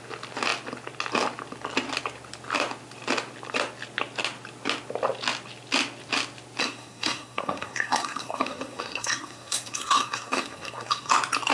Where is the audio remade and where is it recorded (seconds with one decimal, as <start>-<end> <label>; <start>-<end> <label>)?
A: 0.0-6.6 recorded; 6.6-11.1 remade; 11.1-11.5 recorded